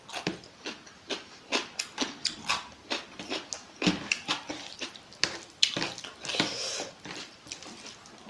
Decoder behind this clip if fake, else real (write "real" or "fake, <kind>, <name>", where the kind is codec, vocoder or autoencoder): real